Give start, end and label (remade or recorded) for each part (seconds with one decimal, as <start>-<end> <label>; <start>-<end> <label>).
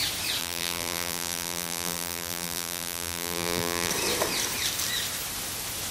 0.0-0.4 recorded; 0.4-3.9 remade; 3.9-5.9 recorded